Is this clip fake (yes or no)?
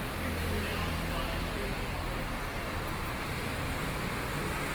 no